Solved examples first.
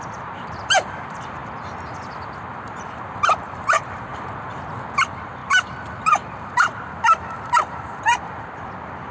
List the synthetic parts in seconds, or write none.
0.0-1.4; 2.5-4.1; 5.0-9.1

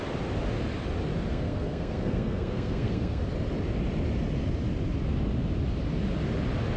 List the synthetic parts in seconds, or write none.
1.3-3.2

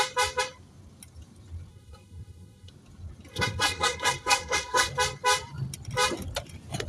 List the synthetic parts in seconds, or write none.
1.7-2.7; 3.3-4.9